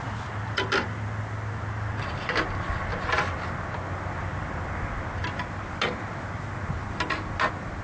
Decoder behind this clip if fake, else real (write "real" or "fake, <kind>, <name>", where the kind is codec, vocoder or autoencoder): real